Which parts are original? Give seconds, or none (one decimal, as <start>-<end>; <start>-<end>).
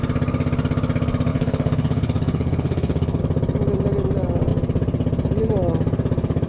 0.0-1.3; 3.2-6.5